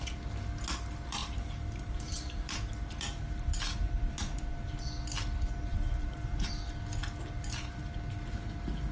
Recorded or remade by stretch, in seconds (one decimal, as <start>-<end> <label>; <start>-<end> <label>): 0.0-1.2 recorded; 1.2-4.7 remade; 4.7-5.7 recorded; 5.7-6.5 remade; 6.5-8.9 recorded